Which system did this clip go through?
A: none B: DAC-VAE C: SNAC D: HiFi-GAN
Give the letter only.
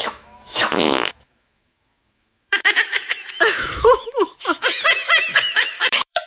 B